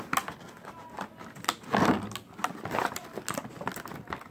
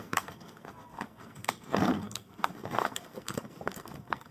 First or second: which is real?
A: first